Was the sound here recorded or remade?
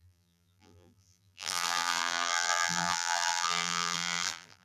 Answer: remade